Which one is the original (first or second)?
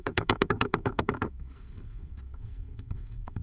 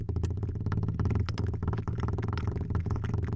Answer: second